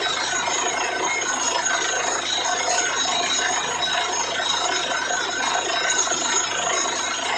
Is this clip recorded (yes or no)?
yes